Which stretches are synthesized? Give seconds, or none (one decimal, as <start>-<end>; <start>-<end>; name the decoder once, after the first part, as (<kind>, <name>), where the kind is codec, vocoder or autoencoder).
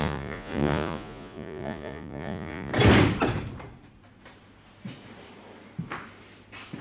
0.0-2.7 (vocoder, Vocos)